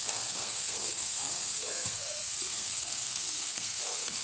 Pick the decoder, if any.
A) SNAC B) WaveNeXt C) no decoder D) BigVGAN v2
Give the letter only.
A